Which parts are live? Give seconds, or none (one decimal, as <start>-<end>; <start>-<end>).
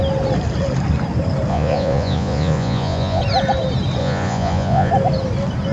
0.0-1.5; 3.2-4.0; 4.9-5.7